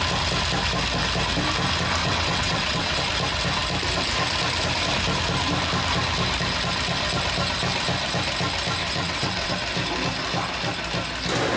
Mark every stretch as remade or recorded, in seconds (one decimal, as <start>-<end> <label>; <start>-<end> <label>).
0.0-2.0 recorded; 2.0-3.0 remade; 3.0-8.8 recorded; 8.8-9.5 remade; 9.5-11.6 recorded